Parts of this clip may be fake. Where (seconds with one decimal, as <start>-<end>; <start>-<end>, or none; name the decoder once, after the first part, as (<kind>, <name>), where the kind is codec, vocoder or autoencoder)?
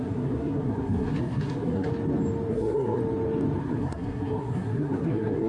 0.0-1.9 (codec, SNAC); 2.5-3.0; 3.6-5.5